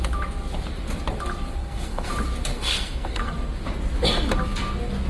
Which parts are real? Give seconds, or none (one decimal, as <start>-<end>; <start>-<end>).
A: 0.0-1.6; 2.1-2.5; 3.3-5.1